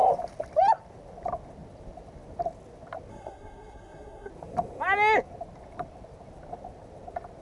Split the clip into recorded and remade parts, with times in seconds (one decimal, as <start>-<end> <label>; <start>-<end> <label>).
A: 0.0-3.1 recorded; 3.1-4.3 remade; 4.3-7.4 recorded